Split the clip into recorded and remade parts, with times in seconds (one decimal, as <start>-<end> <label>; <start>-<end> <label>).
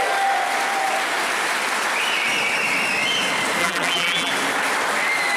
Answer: 0.0-3.6 recorded; 3.6-4.3 remade; 4.3-5.4 recorded